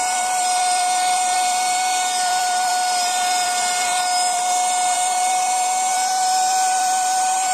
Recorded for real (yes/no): no